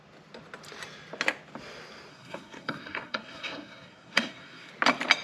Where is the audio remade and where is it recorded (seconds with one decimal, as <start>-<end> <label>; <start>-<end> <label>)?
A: 0.0-2.1 recorded; 2.1-4.7 remade; 4.7-5.2 recorded